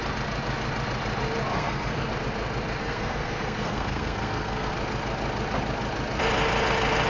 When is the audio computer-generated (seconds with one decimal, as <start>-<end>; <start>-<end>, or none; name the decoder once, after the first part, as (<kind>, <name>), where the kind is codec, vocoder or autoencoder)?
1.5-2.1 (codec, SNAC); 2.8-4.7